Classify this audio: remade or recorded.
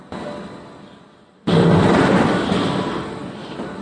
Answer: recorded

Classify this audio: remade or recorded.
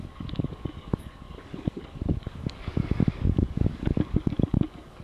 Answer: remade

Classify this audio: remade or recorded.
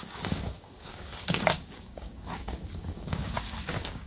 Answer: remade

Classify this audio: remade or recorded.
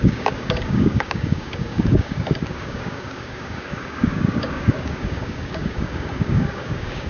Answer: remade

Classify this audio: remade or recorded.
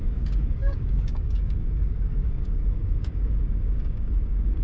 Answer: remade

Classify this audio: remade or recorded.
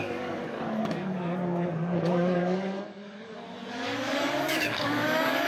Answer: remade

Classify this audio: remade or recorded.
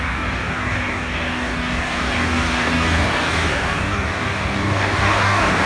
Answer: remade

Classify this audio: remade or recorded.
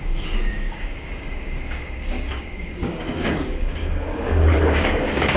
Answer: remade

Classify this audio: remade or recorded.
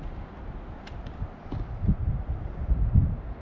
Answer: recorded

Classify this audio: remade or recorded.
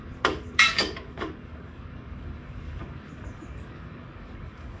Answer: remade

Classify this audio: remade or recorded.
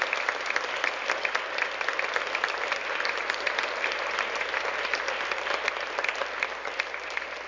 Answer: recorded